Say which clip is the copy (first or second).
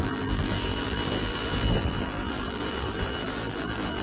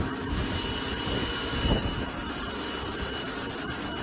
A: first